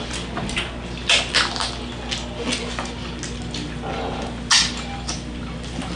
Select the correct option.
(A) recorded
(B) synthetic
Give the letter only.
A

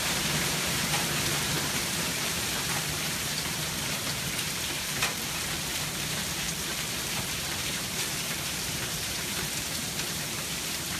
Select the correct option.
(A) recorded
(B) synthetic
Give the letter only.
B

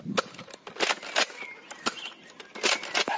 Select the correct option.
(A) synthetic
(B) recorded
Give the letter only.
B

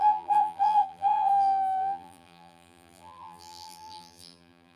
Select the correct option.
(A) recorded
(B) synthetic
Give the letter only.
B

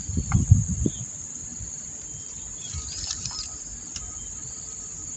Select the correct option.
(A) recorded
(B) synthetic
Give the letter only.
A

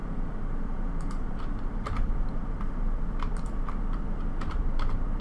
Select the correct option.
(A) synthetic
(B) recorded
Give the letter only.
A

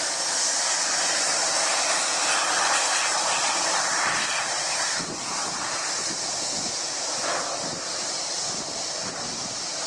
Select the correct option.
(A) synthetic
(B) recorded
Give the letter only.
A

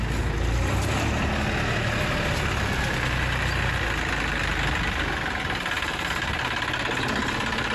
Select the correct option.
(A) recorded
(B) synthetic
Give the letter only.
A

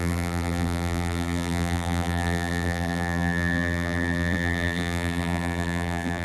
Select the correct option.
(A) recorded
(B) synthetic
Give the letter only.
B